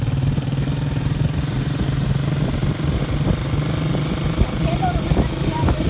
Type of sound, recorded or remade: remade